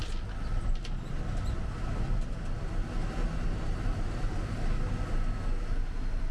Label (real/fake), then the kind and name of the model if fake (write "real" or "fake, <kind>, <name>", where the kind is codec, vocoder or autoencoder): real